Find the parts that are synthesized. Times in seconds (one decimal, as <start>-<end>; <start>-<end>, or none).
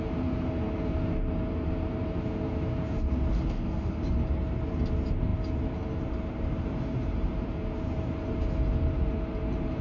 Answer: 3.3-4.0